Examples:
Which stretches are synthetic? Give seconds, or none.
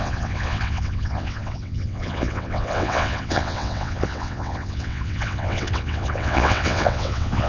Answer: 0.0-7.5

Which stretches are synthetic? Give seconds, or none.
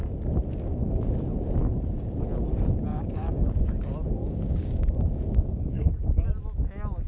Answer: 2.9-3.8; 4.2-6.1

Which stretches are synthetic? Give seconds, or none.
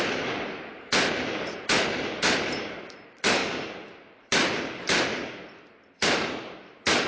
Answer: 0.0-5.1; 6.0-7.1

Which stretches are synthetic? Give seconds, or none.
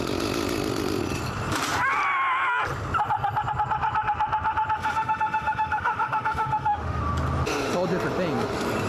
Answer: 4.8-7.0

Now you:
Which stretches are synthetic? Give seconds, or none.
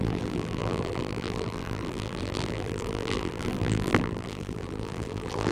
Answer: 0.0-5.5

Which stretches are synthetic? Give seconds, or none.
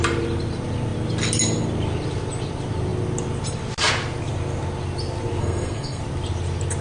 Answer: 5.4-6.0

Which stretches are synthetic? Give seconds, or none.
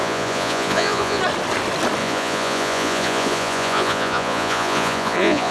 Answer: 0.0-1.2; 2.0-5.5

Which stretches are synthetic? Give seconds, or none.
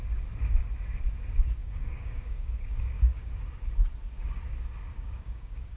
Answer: 1.6-3.4; 4.9-5.8